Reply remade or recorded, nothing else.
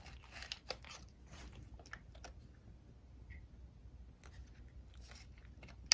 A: recorded